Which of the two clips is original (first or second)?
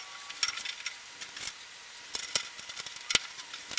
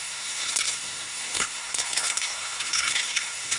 first